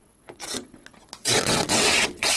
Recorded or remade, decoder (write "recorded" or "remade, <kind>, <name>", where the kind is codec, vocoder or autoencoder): remade, vocoder, WaveNeXt